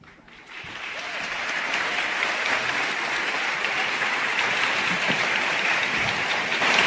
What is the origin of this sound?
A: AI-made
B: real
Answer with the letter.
A